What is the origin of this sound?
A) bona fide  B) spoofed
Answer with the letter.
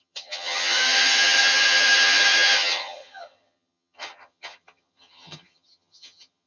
B